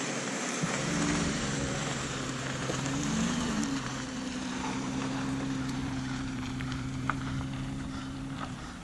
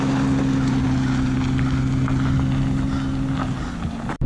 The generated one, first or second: first